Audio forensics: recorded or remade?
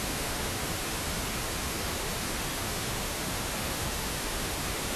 remade